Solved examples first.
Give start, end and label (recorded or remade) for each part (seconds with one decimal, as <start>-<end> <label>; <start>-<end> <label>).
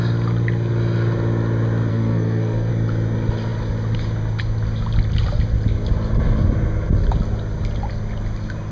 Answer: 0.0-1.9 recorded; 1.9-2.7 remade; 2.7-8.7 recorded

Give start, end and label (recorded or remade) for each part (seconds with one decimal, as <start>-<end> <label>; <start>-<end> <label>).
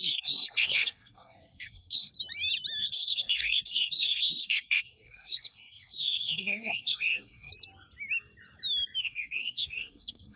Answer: 0.0-2.1 remade; 2.1-2.8 recorded; 2.8-7.5 remade; 7.5-9.0 recorded; 9.0-10.4 remade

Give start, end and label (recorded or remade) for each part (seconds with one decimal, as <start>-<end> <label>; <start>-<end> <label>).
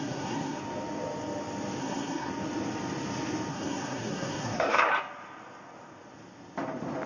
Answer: 0.0-0.6 remade; 0.6-1.8 recorded; 1.8-2.3 remade; 2.3-3.5 recorded; 3.5-4.9 remade; 4.9-7.1 recorded